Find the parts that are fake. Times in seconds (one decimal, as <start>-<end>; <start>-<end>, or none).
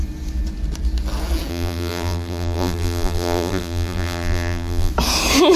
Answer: 1.5-4.9